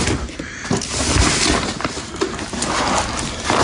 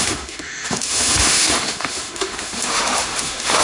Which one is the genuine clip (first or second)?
first